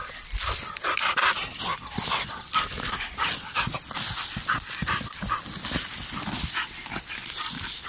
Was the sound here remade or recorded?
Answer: recorded